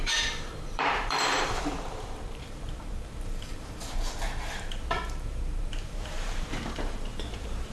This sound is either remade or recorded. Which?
remade